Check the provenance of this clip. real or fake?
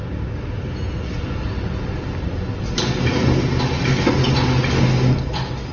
real